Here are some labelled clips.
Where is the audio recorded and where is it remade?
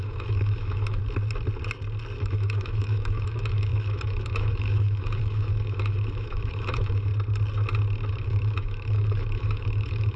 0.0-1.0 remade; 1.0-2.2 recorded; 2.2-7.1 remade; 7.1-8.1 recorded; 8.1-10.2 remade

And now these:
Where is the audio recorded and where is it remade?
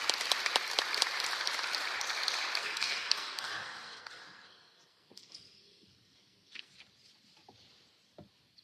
0.0-2.6 recorded; 2.6-6.7 remade; 6.7-8.6 recorded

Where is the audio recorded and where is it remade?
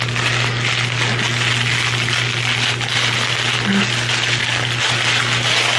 0.0-5.8 recorded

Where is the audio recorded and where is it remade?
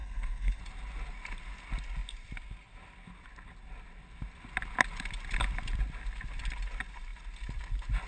0.0-0.6 remade; 0.6-8.1 recorded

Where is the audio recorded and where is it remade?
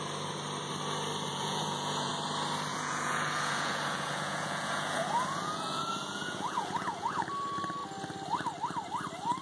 0.0-1.3 recorded; 1.3-2.1 remade; 2.1-2.7 recorded; 2.7-7.2 remade; 7.2-9.4 recorded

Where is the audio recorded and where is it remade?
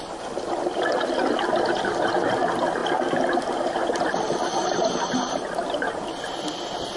0.0-0.9 remade; 0.9-1.6 recorded; 1.6-2.8 remade; 2.8-3.4 recorded; 3.4-7.0 remade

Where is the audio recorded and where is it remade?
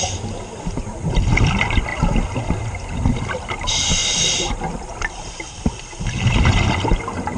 0.0-7.4 recorded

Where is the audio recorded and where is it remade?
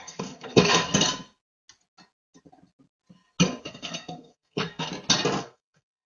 0.0-0.9 remade; 0.9-3.6 recorded; 3.6-4.9 remade; 4.9-5.4 recorded; 5.4-6.1 remade